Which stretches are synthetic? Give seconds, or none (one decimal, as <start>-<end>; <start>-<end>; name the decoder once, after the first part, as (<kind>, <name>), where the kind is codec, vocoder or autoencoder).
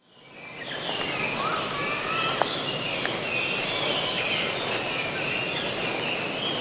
none